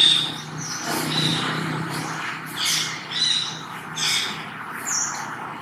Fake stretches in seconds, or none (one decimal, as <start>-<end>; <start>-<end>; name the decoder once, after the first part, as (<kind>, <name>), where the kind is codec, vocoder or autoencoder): 1.3-2.0 (vocoder, BigVGAN v2)